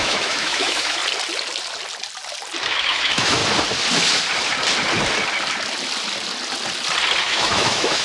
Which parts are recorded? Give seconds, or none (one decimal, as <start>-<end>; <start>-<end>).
1.0-2.6; 3.4-7.2